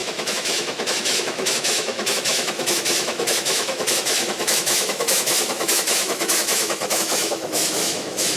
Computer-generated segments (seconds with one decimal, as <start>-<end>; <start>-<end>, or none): 0.0-8.4